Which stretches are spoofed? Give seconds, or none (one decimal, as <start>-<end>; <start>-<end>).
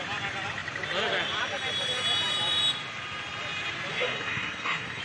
3.9-5.0